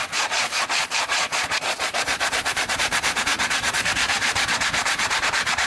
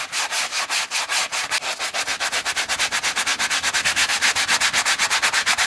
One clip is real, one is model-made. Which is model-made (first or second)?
first